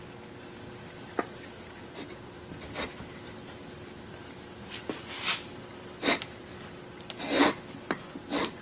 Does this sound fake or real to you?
real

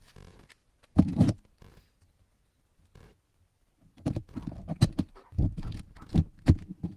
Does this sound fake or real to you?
real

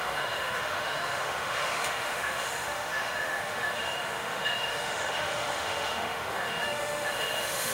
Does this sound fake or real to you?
fake